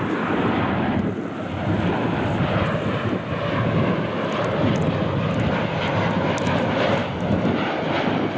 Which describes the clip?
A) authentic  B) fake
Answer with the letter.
A